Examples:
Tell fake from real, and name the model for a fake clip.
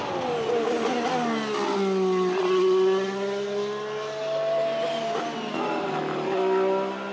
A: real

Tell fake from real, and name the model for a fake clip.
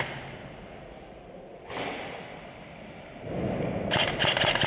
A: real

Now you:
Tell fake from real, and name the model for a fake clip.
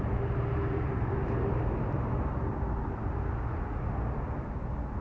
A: real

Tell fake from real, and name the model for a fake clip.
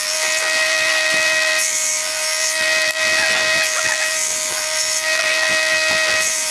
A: fake, vocoder, BigVGAN v2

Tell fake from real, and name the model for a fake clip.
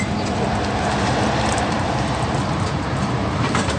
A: fake, vocoder, BigVGAN v2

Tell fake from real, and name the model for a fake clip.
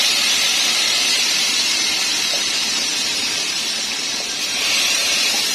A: fake, vocoder, BigVGAN v2